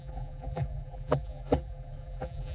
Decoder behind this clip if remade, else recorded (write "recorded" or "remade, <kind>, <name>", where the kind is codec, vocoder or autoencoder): remade, vocoder, BigVGAN v2